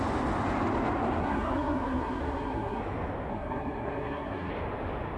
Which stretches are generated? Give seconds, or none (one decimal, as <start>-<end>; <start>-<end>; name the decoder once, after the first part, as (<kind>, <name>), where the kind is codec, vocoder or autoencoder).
1.2-2.8 (codec, SNAC); 3.3-4.5